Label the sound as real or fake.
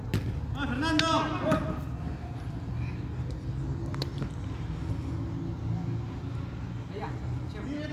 real